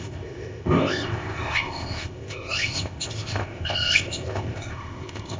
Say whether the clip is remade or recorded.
remade